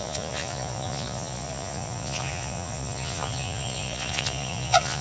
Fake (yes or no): yes